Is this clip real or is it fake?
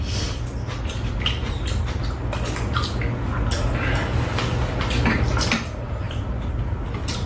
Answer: real